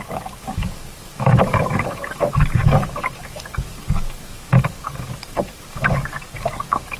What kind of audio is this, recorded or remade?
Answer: remade